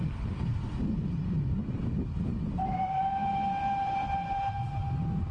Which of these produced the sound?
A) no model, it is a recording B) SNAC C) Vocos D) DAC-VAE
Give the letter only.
A